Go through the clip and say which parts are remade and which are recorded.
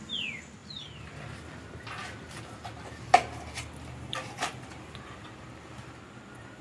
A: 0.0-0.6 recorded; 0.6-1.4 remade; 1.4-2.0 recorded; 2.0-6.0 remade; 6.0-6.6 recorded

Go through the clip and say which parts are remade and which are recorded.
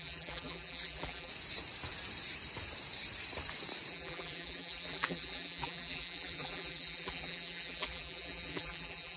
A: 0.0-1.3 remade; 1.3-3.9 recorded; 3.9-9.2 remade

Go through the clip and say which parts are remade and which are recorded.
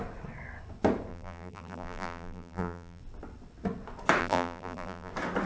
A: 0.0-1.1 recorded; 1.1-3.0 remade; 3.0-4.2 recorded; 4.2-5.1 remade; 5.1-5.5 recorded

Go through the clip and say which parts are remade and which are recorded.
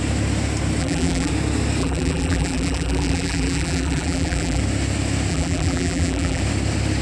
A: 0.0-0.8 recorded; 0.8-1.3 remade; 1.3-1.8 recorded; 1.8-4.6 remade; 4.6-5.3 recorded; 5.3-6.4 remade; 6.4-7.0 recorded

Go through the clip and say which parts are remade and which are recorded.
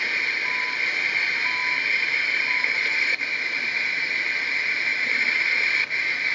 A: 0.0-1.6 recorded; 1.6-4.2 remade; 4.2-6.3 recorded